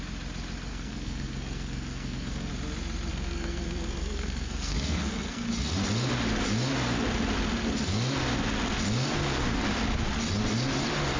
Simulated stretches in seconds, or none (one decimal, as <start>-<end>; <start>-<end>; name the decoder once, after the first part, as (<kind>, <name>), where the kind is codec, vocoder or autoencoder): 0.7-2.5 (codec, SNAC); 3.1-5.5